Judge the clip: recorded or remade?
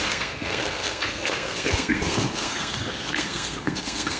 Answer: remade